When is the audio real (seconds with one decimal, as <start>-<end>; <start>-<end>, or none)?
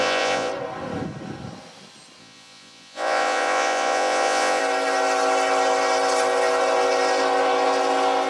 0.5-2.2; 4.6-8.3